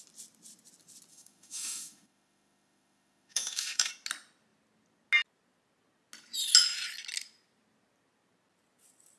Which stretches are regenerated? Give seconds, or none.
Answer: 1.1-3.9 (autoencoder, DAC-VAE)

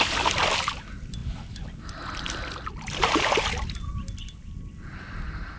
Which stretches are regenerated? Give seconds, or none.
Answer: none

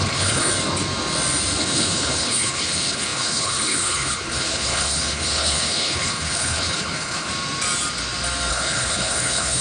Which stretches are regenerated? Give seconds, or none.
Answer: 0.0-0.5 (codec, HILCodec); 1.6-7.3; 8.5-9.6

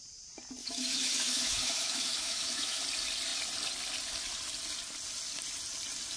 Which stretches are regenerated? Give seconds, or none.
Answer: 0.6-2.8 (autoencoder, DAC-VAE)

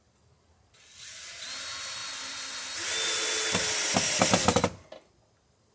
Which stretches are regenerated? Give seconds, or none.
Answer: none